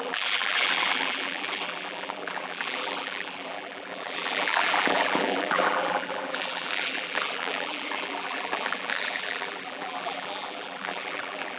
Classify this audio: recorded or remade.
remade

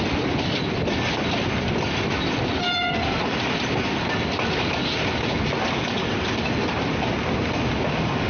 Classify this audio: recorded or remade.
recorded